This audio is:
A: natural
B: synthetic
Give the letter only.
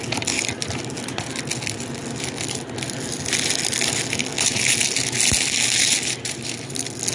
A